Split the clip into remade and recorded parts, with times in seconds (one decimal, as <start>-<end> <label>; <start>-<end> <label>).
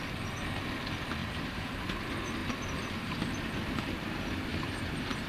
0.0-1.2 recorded; 1.2-1.8 remade; 1.8-4.5 recorded; 4.5-5.3 remade